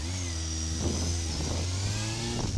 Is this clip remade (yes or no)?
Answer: no